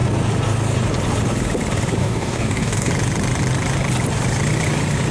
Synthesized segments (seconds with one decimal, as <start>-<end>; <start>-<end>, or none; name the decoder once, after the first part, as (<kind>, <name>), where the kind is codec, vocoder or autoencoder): 2.0-2.9 (codec, DAC)